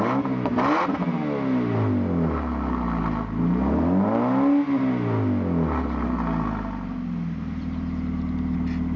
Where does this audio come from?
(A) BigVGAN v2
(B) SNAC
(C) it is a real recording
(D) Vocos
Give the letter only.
C